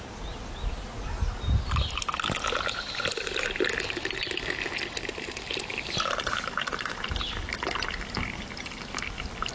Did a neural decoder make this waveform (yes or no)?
no